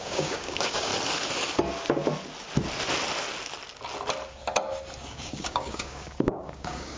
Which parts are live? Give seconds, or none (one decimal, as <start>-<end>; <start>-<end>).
0.9-5.1